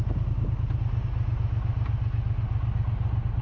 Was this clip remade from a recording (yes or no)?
no